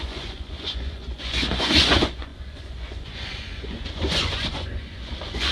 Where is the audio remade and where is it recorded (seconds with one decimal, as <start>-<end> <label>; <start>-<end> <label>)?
0.0-5.5 remade